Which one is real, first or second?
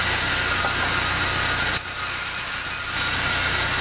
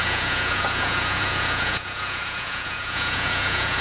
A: first